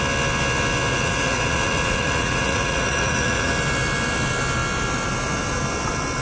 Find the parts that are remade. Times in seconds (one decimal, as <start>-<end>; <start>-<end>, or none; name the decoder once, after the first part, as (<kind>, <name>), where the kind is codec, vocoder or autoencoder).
0.9-3.5 (vocoder, Vocos)